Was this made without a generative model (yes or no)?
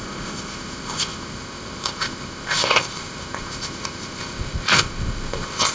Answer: no